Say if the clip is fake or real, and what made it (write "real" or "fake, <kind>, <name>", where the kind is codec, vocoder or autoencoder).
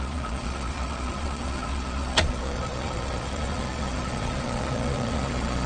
fake, vocoder, Vocos